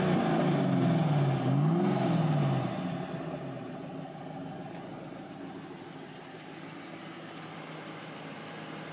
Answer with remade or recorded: recorded